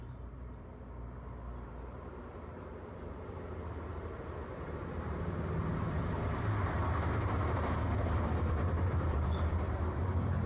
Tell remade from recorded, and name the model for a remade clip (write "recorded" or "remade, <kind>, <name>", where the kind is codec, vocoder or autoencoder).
remade, vocoder, BigVGAN v2